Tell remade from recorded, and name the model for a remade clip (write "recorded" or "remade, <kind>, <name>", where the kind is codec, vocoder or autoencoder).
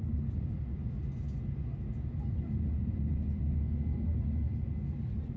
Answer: recorded